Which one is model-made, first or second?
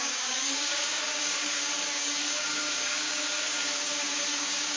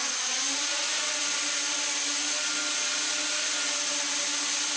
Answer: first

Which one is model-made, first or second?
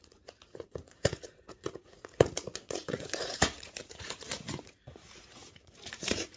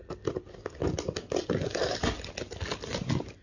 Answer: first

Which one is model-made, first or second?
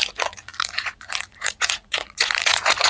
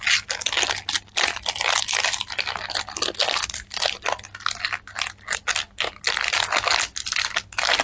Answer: first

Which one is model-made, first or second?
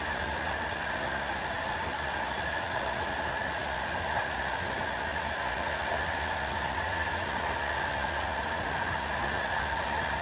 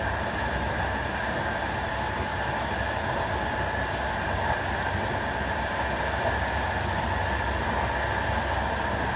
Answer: first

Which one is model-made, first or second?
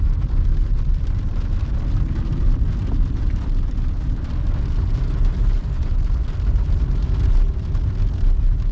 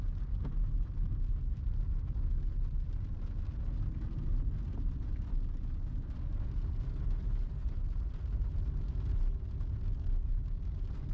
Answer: first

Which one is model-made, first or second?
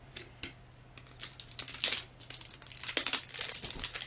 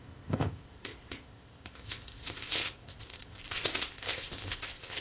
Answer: second